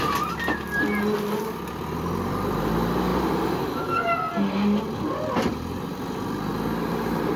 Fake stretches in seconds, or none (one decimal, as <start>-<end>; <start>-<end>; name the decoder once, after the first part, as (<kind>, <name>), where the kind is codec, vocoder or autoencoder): none

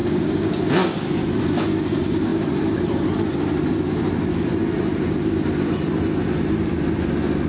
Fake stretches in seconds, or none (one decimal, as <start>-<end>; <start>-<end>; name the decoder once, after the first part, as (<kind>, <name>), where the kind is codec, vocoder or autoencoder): 0.0-0.7 (codec, DAC)

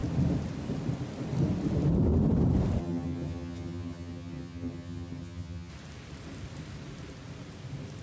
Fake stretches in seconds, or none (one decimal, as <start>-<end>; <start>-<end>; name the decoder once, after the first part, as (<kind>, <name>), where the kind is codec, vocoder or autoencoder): 2.8-5.7 (vocoder, HiFi-GAN)

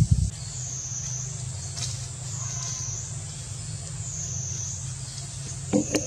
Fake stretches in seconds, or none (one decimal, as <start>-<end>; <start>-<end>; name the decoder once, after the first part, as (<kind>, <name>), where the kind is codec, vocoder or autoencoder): none

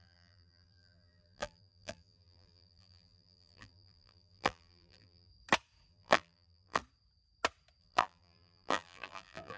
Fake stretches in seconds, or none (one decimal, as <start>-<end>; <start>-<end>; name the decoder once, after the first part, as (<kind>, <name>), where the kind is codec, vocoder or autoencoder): 0.0-5.3 (vocoder, BigVGAN v2); 5.9-6.8; 7.8-9.6

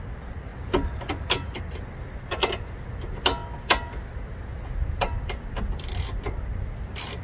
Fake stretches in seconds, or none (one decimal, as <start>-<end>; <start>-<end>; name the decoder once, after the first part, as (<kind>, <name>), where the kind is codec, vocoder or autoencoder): none

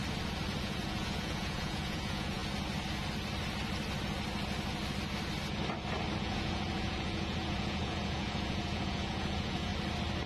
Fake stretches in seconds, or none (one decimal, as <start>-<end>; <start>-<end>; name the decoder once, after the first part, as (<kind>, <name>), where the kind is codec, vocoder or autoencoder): 0.6-2.4 (vocoder, Vocos); 6.2-9.7

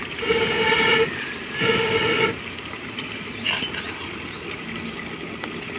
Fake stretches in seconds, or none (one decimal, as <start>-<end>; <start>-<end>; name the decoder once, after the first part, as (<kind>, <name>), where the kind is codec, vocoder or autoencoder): 0.0-1.9 (vocoder, BigVGAN v2)